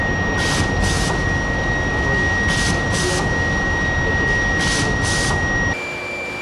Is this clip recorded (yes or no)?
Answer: yes